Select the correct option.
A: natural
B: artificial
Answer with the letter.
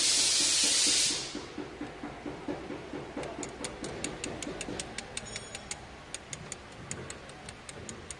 A